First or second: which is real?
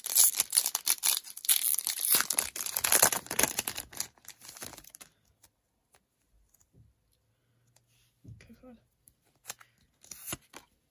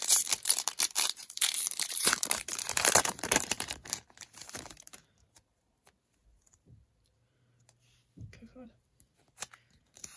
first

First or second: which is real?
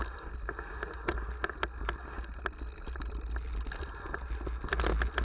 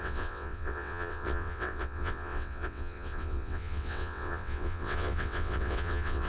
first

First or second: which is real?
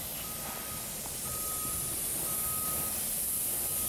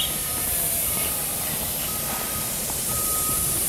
first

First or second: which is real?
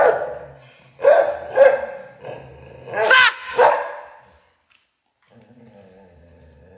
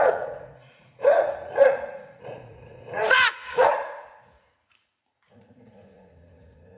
first